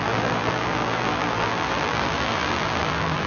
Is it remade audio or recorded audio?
remade